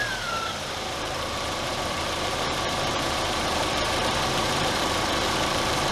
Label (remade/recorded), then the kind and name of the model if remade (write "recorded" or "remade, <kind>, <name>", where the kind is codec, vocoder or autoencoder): remade, vocoder, BigVGAN v2